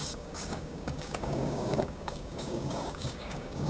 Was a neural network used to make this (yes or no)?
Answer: yes